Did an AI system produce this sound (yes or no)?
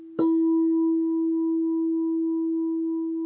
no